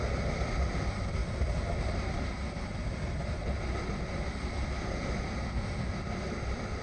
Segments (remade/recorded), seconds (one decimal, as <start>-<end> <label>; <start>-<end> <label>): 0.0-6.8 recorded